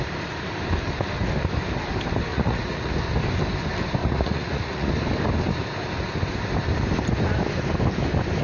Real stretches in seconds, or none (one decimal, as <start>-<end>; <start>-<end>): 0.0-2.3; 2.9-4.0; 4.9-8.4